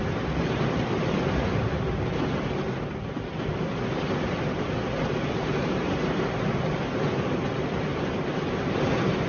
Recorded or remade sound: recorded